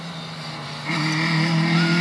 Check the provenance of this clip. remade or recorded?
recorded